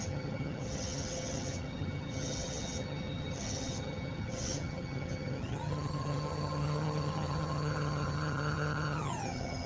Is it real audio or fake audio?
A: fake